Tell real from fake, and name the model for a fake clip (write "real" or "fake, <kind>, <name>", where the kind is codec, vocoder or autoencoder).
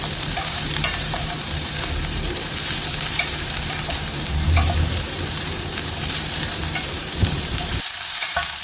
fake, vocoder, BigVGAN v2